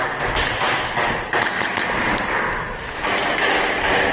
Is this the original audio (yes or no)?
yes